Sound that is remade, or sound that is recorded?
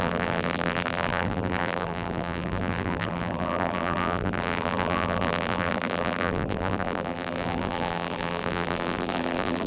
remade